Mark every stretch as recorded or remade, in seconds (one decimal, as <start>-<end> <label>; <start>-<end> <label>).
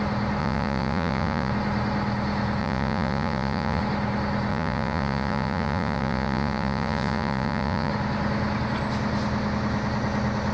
0.0-0.4 recorded; 0.4-1.5 remade; 1.5-2.6 recorded; 2.6-3.8 remade; 3.8-4.5 recorded; 4.5-7.9 remade; 7.9-10.5 recorded